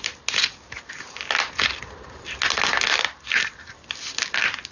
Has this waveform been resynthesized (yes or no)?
no